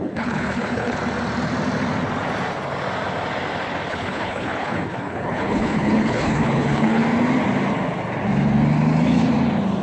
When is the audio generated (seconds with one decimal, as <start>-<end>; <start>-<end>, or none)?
0.0-1.0; 3.9-7.0